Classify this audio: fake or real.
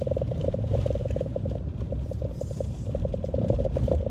fake